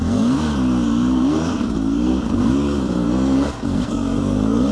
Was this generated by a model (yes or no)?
yes